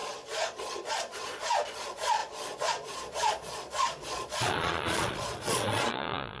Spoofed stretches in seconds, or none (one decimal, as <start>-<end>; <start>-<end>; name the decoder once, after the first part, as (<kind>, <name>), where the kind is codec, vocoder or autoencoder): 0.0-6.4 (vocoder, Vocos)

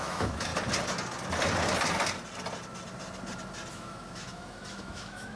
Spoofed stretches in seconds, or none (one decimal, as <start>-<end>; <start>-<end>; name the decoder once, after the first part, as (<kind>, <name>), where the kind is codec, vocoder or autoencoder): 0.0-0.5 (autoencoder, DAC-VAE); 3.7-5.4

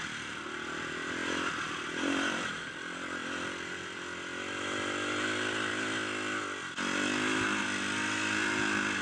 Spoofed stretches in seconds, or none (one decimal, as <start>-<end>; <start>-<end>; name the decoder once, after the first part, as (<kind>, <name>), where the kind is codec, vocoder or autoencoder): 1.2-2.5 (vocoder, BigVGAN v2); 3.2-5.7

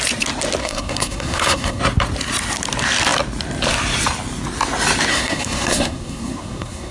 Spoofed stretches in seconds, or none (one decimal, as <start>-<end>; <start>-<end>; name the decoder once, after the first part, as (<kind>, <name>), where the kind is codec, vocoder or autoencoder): 0.6-1.8 (codec, SNAC); 5.1-6.9

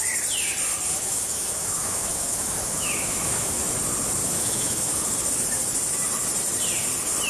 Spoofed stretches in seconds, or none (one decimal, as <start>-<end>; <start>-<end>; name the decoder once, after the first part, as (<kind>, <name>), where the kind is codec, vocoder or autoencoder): 0.9-3.6 (autoencoder, DAC-VAE); 4.2-5.0